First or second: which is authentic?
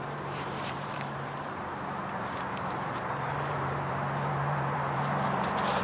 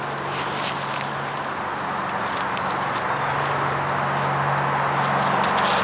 second